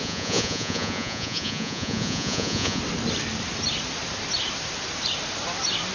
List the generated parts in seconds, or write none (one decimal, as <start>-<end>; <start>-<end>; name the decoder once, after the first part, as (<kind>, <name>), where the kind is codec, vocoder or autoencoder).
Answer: 0.0-2.8 (vocoder, Vocos)